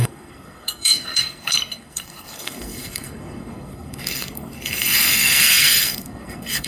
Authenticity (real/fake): fake